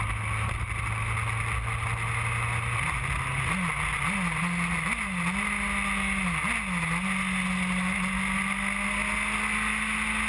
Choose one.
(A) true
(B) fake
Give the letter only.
A